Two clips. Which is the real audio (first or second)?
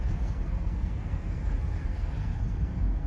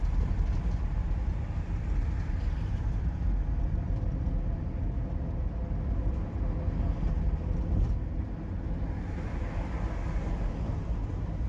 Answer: second